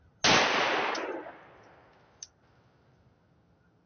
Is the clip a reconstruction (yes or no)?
no